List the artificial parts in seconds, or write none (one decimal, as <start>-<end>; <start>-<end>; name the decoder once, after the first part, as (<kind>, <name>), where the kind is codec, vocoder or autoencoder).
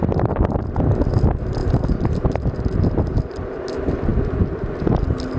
none